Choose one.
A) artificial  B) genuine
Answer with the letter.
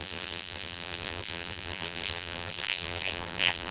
A